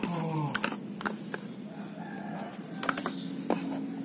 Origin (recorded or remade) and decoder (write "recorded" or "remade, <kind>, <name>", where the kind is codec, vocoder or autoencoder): recorded